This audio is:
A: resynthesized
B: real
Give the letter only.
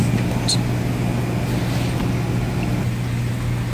B